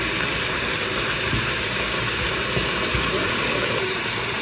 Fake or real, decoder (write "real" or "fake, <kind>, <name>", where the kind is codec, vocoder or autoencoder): fake, vocoder, BigVGAN v2